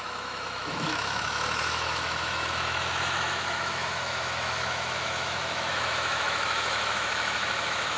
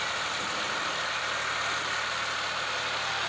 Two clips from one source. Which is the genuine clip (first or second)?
second